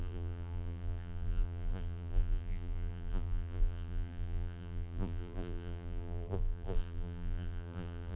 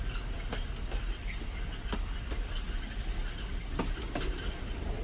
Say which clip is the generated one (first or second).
first